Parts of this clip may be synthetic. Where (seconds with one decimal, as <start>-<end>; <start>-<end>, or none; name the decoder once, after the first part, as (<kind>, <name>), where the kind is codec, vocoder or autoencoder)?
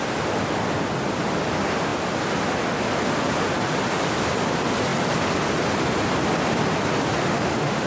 7.2-7.9 (autoencoder, DAC-VAE)